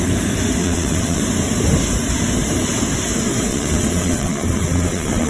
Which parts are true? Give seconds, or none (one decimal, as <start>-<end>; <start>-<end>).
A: 0.0-0.6; 1.2-3.5